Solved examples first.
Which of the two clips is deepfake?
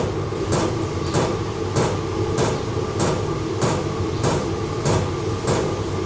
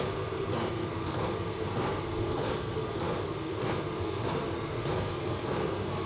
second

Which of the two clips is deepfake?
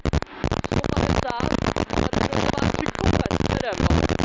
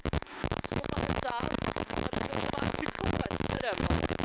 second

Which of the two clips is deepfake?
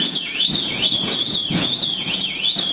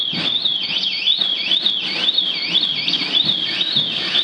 first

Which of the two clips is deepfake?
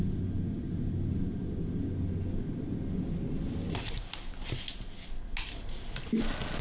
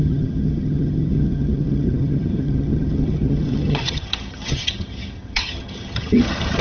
second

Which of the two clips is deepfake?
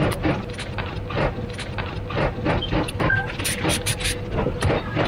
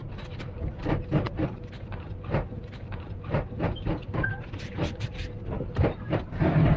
second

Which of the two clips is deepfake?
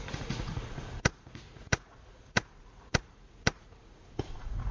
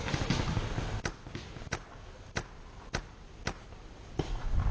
first